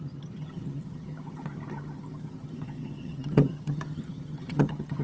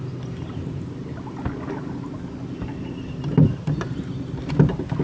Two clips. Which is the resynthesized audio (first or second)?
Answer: first